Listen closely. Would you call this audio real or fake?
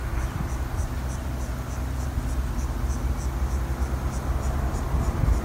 real